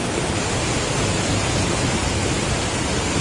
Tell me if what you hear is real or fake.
real